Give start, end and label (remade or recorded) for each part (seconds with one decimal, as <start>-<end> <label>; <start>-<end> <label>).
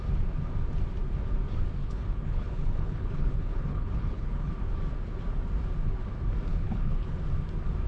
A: 0.0-1.8 recorded; 1.8-4.5 remade; 4.5-6.5 recorded; 6.5-7.2 remade; 7.2-7.9 recorded